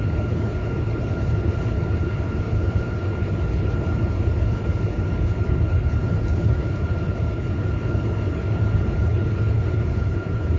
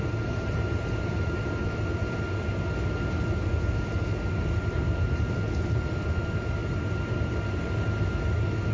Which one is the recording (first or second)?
second